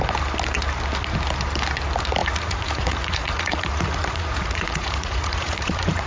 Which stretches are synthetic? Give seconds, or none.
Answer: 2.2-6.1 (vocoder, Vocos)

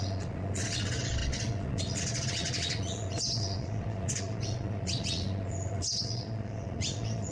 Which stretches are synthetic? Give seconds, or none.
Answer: 0.0-7.3 (vocoder, Vocos)